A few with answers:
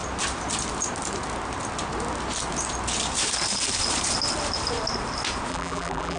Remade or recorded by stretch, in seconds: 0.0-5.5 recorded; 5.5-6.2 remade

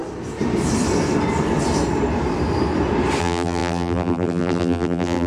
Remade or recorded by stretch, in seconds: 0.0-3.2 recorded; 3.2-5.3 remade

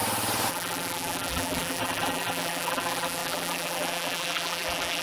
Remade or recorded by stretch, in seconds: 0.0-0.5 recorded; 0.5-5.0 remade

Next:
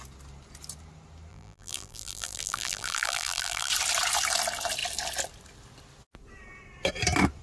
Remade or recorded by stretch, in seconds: 0.0-1.3 recorded; 1.3-3.7 remade; 3.7-7.4 recorded